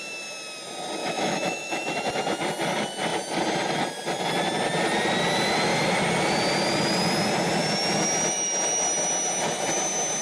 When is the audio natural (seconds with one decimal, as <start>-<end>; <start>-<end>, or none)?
0.0-1.0; 1.9-10.2